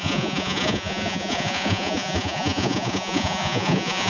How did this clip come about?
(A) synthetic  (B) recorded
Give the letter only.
A